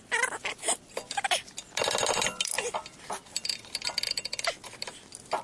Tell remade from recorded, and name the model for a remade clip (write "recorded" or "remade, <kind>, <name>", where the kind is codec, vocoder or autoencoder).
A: recorded